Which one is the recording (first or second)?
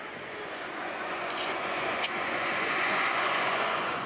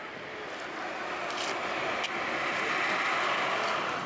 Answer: second